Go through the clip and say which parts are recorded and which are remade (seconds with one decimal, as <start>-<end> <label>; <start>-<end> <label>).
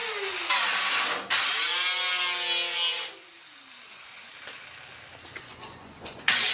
0.0-3.9 recorded; 3.9-4.3 remade; 4.3-5.4 recorded; 5.4-6.5 remade